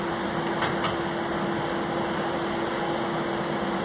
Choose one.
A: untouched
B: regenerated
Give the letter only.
A